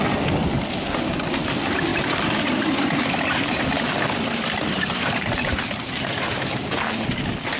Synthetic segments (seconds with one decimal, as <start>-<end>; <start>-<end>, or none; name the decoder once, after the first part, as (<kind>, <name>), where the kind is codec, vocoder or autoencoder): 1.9-6.5 (vocoder, BigVGAN v2)